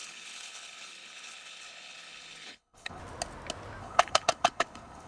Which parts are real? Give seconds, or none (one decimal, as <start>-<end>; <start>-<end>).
3.0-3.8